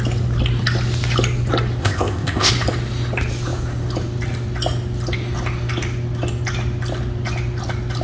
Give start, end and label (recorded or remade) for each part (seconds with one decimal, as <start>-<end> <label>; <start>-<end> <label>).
0.0-1.8 recorded; 1.8-2.5 remade; 2.5-8.0 recorded